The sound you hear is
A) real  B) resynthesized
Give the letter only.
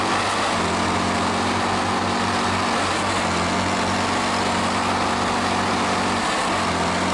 A